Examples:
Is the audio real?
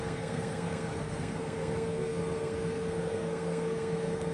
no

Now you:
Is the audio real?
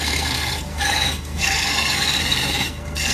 no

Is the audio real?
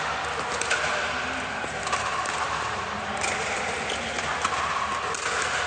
yes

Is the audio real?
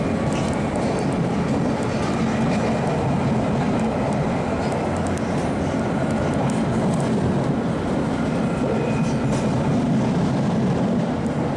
yes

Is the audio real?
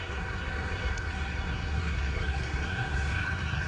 no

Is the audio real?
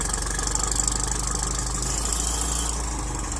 yes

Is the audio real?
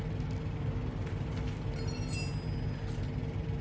yes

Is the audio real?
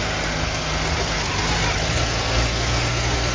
yes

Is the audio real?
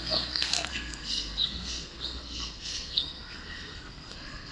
no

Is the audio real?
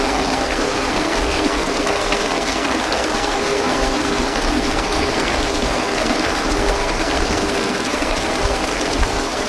no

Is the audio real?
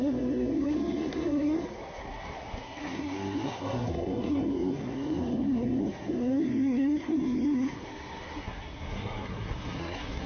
no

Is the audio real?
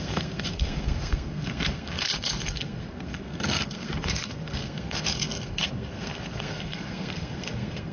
no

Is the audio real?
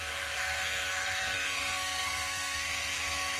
no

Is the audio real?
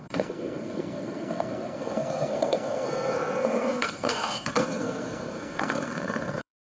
no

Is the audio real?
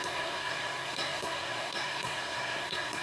no